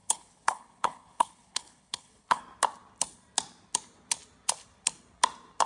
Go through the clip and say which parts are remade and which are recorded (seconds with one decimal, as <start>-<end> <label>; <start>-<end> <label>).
0.0-2.4 remade; 2.4-5.7 recorded